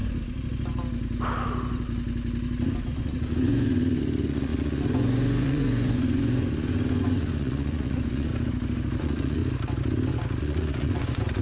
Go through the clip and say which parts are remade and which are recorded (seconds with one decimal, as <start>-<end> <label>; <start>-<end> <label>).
0.0-2.9 recorded; 2.9-8.3 remade; 8.3-9.0 recorded; 9.0-9.4 remade; 9.4-10.4 recorded; 10.4-11.4 remade

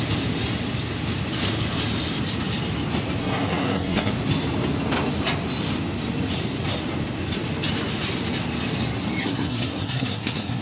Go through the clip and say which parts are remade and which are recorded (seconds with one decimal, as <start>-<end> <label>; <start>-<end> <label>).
0.0-3.2 recorded; 3.2-4.1 remade; 4.1-9.2 recorded; 9.2-10.6 remade